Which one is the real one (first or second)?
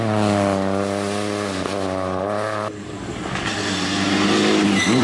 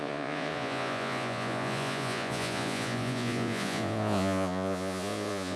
first